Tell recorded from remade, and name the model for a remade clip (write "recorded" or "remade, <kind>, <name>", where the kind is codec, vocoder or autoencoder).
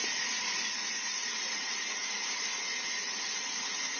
remade, vocoder, Vocos